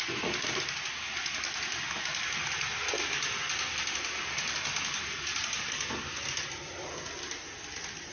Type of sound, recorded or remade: recorded